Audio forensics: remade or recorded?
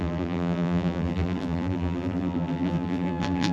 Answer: remade